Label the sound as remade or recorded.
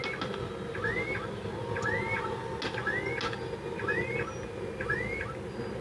recorded